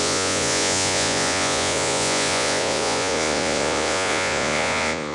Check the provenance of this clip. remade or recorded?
remade